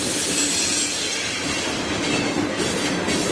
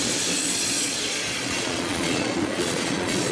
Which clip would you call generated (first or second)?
second